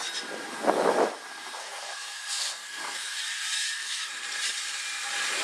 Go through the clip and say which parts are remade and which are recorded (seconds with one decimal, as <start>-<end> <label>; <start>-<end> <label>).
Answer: 0.0-1.6 recorded; 1.6-4.1 remade; 4.1-5.4 recorded

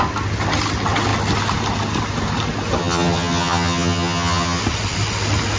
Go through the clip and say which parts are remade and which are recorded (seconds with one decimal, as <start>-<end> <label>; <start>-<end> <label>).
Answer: 0.0-2.8 recorded; 2.8-4.6 remade; 4.6-5.6 recorded

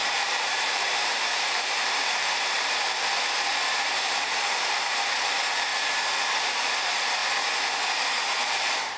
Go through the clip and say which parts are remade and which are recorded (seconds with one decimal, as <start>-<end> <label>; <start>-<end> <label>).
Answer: 0.0-5.7 remade; 5.7-6.5 recorded; 6.5-7.2 remade; 7.2-8.4 recorded; 8.4-9.0 remade

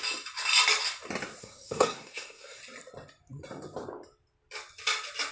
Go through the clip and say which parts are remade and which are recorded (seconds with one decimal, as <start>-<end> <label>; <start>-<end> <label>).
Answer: 0.0-1.4 recorded; 1.4-2.6 remade; 2.6-5.3 recorded

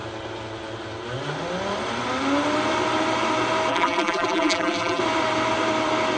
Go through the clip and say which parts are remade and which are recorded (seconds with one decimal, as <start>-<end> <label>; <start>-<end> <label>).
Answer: 0.0-3.7 recorded; 3.7-5.0 remade; 5.0-6.2 recorded

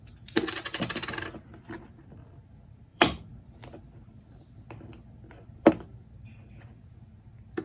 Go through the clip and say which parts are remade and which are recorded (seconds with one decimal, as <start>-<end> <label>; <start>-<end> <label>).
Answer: 0.0-2.9 recorded; 2.9-5.7 remade; 5.7-7.6 recorded